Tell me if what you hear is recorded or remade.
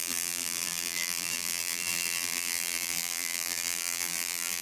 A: remade